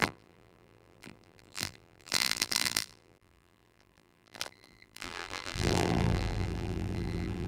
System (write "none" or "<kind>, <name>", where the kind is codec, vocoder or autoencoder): vocoder, BigVGAN v2